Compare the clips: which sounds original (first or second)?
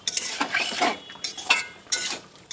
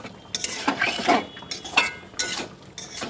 second